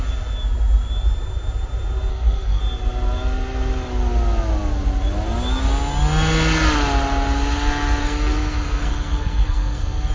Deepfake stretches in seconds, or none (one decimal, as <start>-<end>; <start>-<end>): 2.1-2.6; 8.0-10.1